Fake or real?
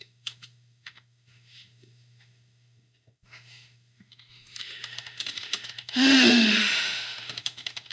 fake